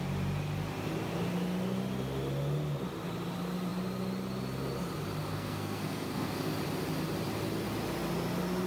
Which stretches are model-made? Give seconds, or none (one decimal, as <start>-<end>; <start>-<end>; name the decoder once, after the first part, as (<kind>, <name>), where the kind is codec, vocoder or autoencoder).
5.3-6.5 (codec, SNAC)